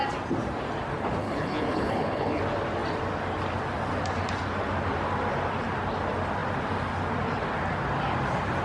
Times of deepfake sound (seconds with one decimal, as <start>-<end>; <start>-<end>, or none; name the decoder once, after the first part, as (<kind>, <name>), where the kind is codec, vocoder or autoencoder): 1.2-2.4 (codec, HILCodec)